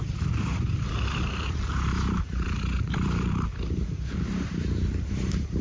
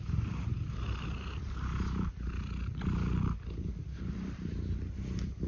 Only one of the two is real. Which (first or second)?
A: second